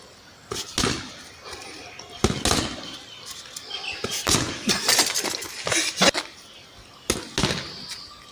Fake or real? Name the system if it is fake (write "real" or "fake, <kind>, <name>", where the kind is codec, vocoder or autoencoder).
real